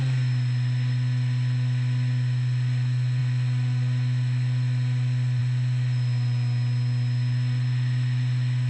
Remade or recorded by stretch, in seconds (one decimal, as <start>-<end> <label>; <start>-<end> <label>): 0.0-8.7 recorded